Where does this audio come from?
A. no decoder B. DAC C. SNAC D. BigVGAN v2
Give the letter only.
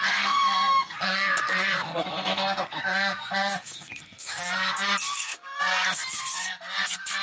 C